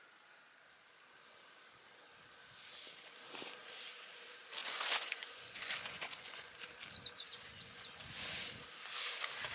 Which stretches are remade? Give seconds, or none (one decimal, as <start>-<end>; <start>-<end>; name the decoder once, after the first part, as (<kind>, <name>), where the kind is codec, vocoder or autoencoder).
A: 4.6-6.5 (vocoder, Vocos); 7.3-8.5